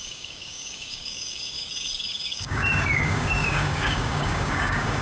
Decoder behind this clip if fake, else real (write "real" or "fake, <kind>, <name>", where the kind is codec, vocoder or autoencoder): fake, codec, DAC